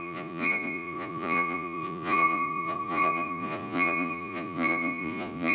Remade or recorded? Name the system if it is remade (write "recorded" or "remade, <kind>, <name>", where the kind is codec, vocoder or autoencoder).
remade, vocoder, Vocos